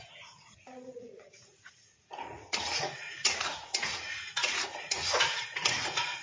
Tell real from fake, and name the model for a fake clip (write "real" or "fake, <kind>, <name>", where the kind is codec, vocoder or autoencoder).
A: fake, vocoder, Vocos